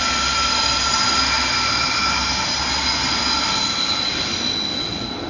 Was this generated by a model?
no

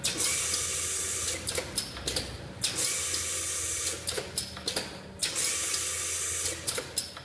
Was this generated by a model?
no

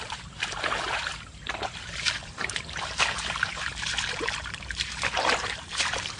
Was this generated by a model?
yes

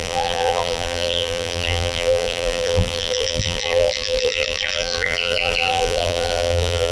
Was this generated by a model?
yes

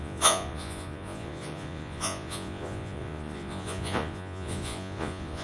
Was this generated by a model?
yes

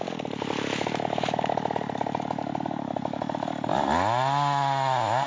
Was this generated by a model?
no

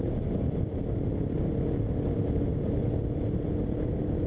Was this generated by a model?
no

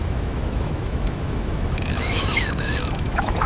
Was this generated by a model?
yes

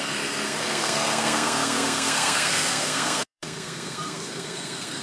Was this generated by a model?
yes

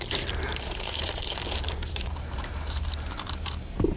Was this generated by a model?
yes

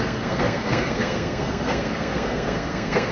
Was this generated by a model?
yes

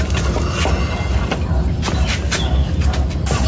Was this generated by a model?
no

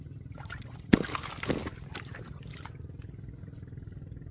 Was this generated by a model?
no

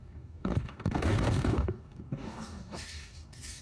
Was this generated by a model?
yes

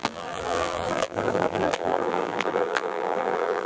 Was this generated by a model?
yes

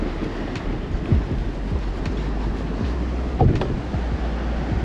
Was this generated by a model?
no